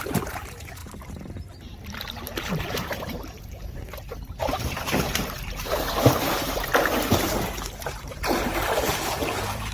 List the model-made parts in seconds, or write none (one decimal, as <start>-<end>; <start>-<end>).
0.0-6.7; 8.1-9.7